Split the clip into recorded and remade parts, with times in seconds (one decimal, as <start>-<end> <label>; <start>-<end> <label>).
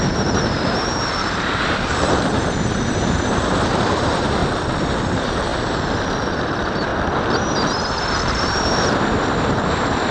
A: 0.0-4.4 remade; 4.4-5.1 recorded; 5.1-5.5 remade; 5.5-6.3 recorded; 6.3-6.9 remade; 6.9-8.1 recorded; 8.1-10.1 remade